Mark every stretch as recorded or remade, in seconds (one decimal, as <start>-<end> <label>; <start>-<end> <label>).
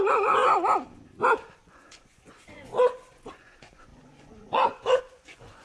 0.0-0.4 remade; 0.4-1.6 recorded; 1.6-5.6 remade